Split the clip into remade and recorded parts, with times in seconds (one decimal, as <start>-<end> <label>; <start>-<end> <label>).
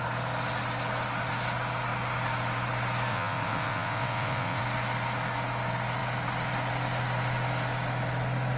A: 0.0-3.1 recorded; 3.1-4.6 remade; 4.6-8.6 recorded